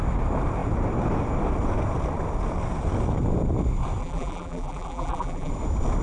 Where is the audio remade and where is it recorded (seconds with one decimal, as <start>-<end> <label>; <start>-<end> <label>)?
0.0-4.0 recorded; 4.0-5.5 remade; 5.5-6.0 recorded